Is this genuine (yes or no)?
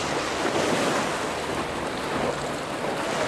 yes